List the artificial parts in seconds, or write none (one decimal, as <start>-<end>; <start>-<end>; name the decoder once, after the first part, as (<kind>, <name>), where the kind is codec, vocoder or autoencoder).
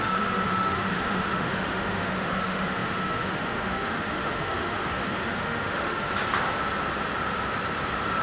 0.0-6.1 (autoencoder, DAC-VAE)